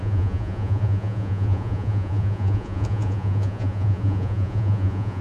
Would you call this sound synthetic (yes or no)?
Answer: yes